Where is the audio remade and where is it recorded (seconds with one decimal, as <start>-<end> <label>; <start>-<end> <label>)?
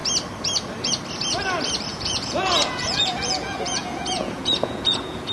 0.0-1.9 recorded; 1.9-5.3 remade